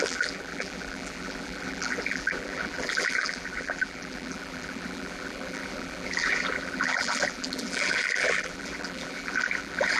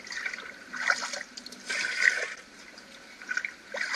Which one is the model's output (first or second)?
first